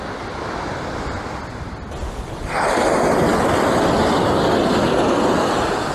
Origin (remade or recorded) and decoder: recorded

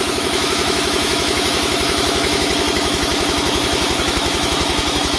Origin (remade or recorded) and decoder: remade, autoencoder, DAC-VAE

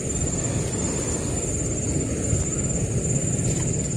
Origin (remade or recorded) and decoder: recorded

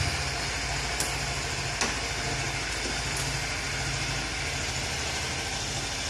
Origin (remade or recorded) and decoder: recorded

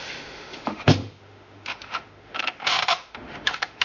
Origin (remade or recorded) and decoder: remade, autoencoder, DAC-VAE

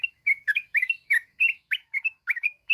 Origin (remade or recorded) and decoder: remade, autoencoder, DAC-VAE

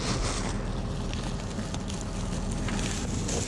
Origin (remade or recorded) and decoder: recorded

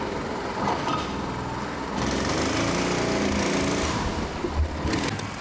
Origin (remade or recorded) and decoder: recorded